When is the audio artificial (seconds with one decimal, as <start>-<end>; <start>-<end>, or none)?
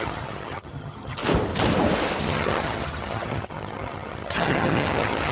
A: 0.0-1.2; 2.2-5.3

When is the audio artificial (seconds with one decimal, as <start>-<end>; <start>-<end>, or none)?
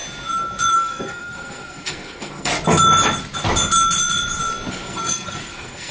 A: 0.7-2.5; 4.7-5.9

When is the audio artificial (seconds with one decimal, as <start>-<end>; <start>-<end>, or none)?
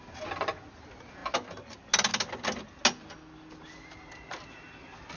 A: none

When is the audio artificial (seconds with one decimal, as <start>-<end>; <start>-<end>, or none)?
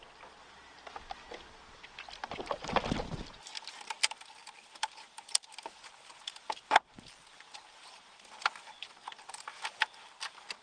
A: none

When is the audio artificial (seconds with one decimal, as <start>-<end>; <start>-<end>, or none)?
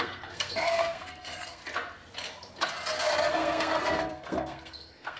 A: 0.0-1.6; 3.3-5.2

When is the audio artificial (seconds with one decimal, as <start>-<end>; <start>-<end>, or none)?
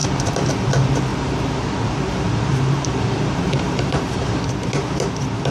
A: 0.0-0.5; 1.1-4.4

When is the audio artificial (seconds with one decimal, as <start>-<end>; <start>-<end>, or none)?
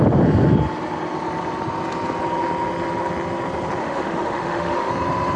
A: 3.8-4.9